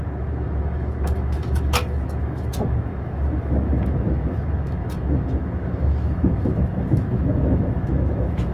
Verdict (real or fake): fake